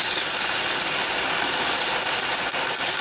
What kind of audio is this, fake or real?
real